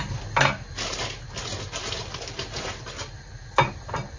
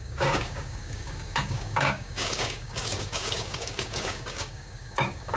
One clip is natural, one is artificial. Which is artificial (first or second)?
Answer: second